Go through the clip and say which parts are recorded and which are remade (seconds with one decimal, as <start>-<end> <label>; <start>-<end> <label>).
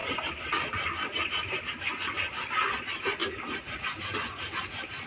0.0-5.1 recorded